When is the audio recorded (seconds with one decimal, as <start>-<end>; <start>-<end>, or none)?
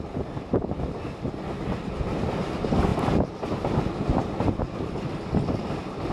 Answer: 0.0-2.9